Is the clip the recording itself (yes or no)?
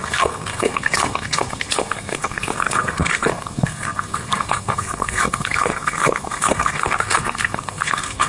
no